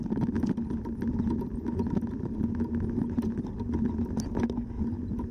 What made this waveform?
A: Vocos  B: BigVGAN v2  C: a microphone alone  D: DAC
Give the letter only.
C